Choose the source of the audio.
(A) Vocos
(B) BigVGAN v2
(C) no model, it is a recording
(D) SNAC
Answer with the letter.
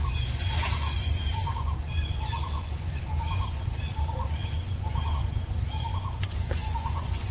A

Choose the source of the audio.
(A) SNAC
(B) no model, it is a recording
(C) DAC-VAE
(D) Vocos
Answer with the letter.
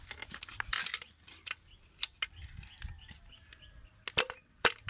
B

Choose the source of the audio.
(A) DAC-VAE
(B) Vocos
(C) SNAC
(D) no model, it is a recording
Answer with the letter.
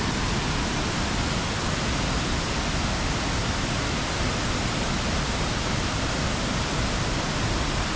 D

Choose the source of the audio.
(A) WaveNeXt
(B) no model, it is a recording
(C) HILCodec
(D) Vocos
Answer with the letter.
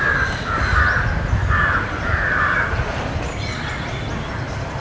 B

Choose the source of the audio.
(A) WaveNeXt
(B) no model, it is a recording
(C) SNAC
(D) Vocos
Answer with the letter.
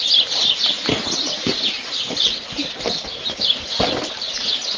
B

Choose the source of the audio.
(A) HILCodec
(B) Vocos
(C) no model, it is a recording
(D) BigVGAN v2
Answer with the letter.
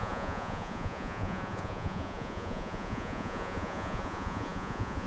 B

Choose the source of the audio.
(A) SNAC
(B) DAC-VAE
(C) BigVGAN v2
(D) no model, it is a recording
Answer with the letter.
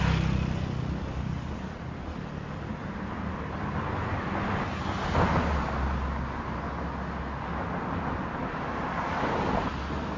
D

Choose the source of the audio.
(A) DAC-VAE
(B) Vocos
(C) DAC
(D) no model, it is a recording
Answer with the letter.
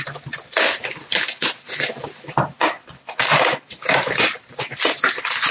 D